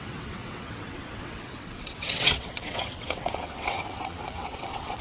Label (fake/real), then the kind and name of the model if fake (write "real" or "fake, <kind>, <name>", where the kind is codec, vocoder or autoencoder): fake, vocoder, WaveNeXt